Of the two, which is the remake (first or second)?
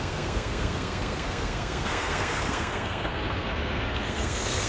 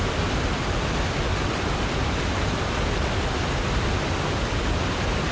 first